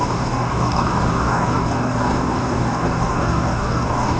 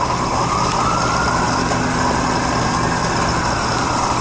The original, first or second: second